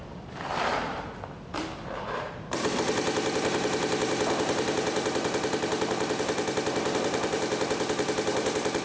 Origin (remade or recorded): remade